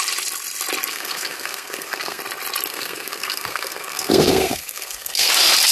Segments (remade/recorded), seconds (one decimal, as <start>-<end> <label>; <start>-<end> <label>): 0.0-0.9 recorded; 0.9-2.2 remade; 2.2-2.7 recorded; 2.7-5.3 remade; 5.3-5.7 recorded